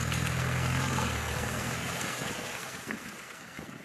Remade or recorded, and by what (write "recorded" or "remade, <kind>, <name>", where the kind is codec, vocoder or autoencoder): remade, codec, SNAC